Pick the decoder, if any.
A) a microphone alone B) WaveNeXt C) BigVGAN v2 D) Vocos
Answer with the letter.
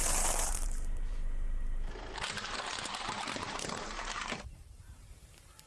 C